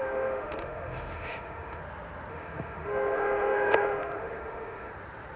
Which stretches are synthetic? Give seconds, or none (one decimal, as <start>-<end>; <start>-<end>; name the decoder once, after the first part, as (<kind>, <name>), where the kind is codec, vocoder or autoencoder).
0.0-1.8 (autoencoder, DAC-VAE); 2.3-4.9